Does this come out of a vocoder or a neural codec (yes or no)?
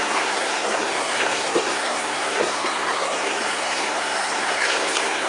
yes